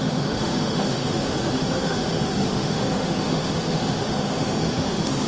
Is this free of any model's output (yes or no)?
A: no